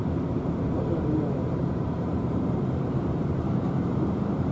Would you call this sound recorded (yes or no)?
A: no